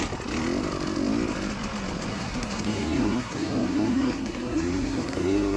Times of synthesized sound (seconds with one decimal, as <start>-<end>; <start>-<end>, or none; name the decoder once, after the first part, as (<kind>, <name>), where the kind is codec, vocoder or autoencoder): 2.1-5.6 (codec, SNAC)